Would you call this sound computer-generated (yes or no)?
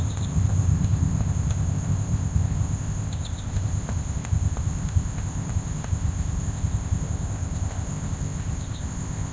yes